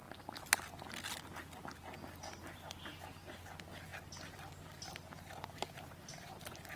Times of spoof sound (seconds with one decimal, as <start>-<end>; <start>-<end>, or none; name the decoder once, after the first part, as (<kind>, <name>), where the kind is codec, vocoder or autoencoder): none